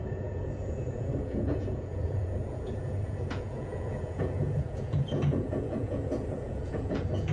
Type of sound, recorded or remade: remade